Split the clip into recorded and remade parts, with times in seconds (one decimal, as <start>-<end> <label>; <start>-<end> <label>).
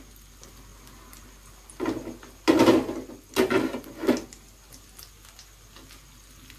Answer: 0.0-6.6 recorded